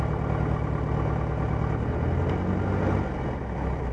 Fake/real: real